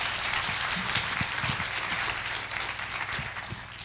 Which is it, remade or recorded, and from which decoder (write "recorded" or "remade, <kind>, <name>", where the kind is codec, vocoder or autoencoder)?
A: recorded